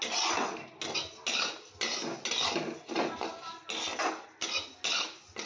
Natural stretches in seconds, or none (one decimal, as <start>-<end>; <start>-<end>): 0.0-5.5